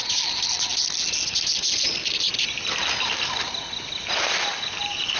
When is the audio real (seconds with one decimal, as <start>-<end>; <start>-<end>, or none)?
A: 0.0-5.2